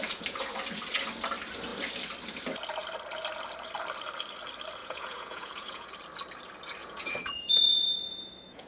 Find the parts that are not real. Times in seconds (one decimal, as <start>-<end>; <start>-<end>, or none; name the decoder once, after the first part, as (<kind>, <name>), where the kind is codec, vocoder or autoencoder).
4.8-5.9 (vocoder, Vocos); 6.8-8.7

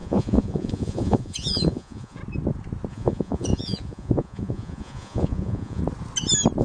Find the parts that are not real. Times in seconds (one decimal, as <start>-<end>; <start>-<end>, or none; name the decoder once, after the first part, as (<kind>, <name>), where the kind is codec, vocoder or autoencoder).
0.0-2.2 (vocoder, Vocos); 2.9-5.8

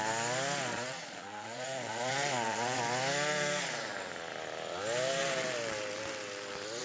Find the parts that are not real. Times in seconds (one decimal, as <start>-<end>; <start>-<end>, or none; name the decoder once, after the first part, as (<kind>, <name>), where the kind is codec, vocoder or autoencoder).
0.7-2.8 (vocoder, Vocos)

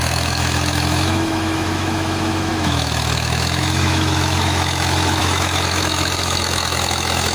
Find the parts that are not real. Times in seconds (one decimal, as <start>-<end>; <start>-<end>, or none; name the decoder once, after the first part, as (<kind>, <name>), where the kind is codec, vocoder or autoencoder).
0.0-7.3 (autoencoder, DAC-VAE)

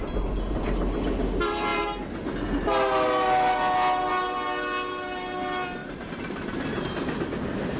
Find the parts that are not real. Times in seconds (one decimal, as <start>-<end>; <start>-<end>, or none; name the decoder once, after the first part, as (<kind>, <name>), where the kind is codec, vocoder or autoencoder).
none

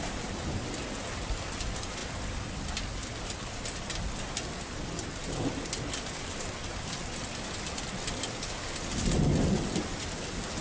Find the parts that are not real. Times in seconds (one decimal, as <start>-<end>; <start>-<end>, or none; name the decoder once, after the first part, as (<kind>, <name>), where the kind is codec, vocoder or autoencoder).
3.1-5.5 (vocoder, BigVGAN v2)

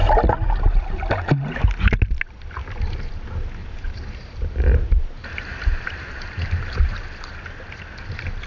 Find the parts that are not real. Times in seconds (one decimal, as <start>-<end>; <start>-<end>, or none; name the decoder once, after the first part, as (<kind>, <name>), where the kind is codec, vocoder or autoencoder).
2.6-3.1 (vocoder, BigVGAN v2); 3.6-7.0